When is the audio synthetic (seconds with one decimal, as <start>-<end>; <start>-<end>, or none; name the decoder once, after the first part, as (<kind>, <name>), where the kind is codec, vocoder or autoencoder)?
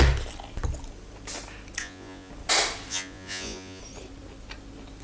1.8-2.3 (vocoder, Vocos); 2.9-3.8